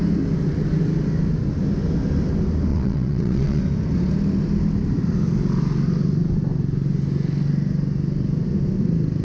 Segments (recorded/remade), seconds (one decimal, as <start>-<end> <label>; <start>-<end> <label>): 0.0-2.7 recorded; 2.7-3.6 remade; 3.6-9.2 recorded